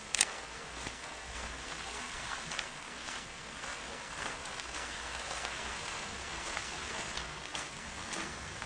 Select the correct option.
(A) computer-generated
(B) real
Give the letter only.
A